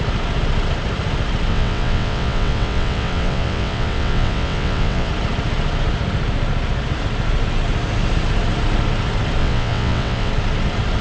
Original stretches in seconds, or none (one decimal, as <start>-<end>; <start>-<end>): 0.0-1.5; 5.1-9.4; 10.3-11.0